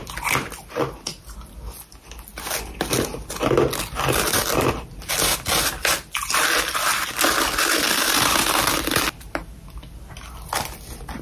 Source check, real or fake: real